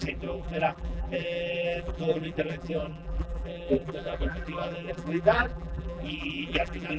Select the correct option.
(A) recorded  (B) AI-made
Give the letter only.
B